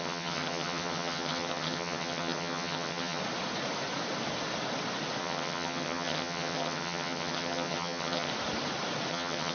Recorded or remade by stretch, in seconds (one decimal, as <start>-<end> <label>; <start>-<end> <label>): 0.0-3.2 remade; 3.2-5.2 recorded; 5.2-8.3 remade; 8.3-9.1 recorded; 9.1-9.5 remade